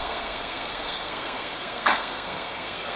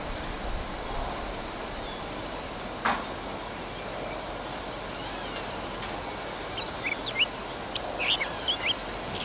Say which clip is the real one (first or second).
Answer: second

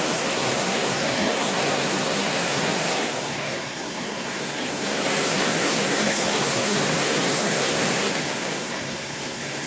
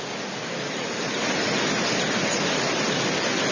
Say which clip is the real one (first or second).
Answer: second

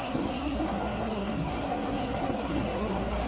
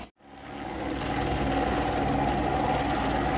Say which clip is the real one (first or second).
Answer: second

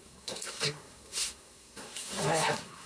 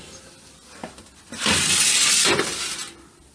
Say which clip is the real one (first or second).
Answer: second